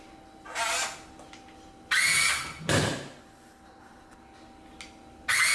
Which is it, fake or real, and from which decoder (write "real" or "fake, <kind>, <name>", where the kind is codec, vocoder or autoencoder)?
real